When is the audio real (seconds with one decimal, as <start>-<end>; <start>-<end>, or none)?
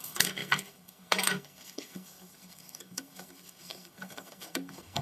none